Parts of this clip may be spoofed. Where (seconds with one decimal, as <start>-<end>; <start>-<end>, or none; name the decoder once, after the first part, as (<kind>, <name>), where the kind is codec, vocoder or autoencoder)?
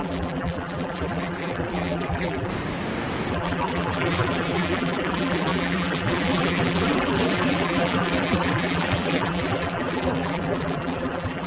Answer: 0.0-2.5 (vocoder, BigVGAN v2); 3.3-11.5